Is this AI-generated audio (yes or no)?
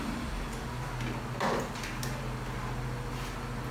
no